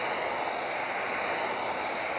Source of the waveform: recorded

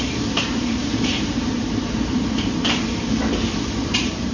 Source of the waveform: remade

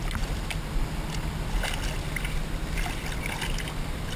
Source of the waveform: recorded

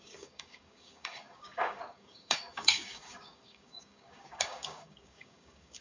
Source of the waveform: remade